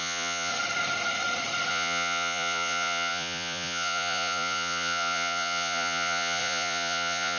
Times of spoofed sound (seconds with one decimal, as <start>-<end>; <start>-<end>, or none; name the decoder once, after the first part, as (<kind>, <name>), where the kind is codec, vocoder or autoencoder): 0.0-0.5 (vocoder, Vocos); 1.7-7.4